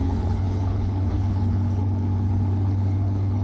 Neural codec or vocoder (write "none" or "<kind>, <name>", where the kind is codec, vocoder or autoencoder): codec, HILCodec